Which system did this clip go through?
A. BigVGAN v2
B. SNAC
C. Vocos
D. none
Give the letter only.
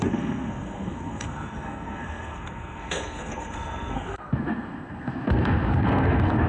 B